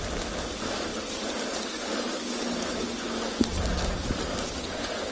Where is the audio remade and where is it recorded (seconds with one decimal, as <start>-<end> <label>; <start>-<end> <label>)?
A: 0.0-5.1 recorded